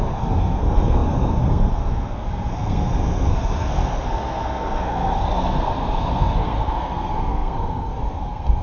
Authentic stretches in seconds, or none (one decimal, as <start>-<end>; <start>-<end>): none